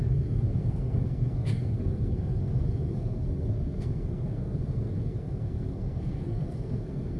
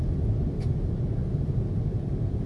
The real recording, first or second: second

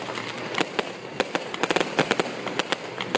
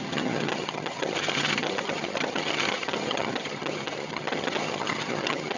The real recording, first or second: first